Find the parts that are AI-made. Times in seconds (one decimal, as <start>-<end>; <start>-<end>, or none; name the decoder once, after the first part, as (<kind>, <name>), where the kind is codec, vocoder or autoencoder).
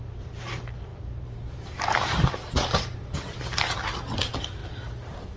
0.9-3.4 (vocoder, BigVGAN v2)